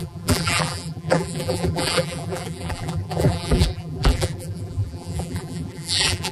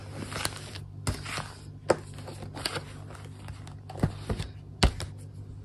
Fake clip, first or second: first